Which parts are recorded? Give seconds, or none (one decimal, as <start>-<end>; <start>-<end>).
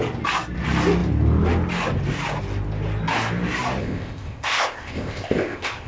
0.0-3.8